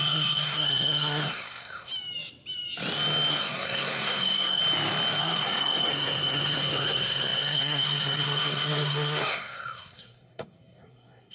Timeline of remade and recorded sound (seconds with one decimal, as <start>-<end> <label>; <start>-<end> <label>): 0.0-1.9 remade; 1.9-3.3 recorded; 3.3-4.6 remade; 4.6-5.2 recorded; 5.2-11.3 remade